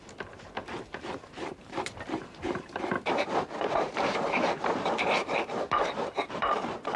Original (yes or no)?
no